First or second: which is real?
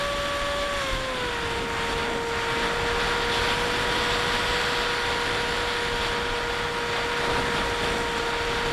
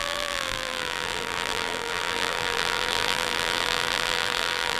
first